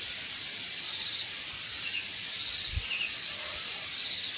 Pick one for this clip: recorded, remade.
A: recorded